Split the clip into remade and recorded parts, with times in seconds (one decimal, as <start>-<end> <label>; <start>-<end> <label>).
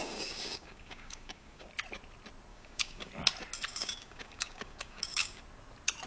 0.0-1.7 remade; 1.7-2.5 recorded; 2.5-3.1 remade; 3.1-3.7 recorded; 3.7-5.4 remade; 5.4-6.1 recorded